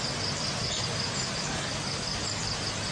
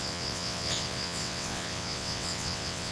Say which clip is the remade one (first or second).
second